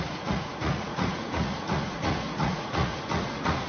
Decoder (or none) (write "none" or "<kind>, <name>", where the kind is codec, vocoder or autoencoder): vocoder, Vocos